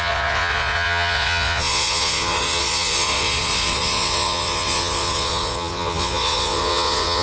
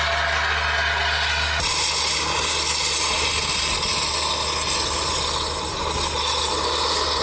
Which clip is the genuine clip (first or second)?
second